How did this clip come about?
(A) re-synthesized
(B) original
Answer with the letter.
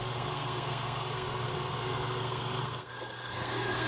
A